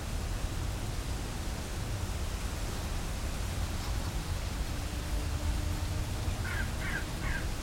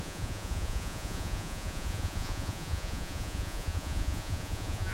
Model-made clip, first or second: second